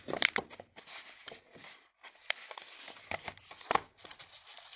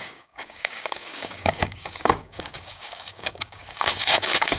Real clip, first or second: first